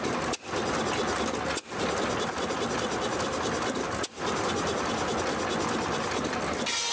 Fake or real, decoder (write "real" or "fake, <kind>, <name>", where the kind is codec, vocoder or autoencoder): real